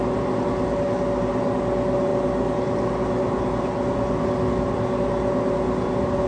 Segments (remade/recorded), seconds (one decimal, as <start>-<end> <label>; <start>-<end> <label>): 0.0-6.3 recorded